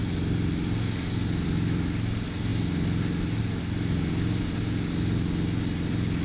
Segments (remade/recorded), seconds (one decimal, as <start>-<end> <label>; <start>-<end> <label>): 0.0-6.2 recorded